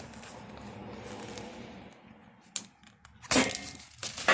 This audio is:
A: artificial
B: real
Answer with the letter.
B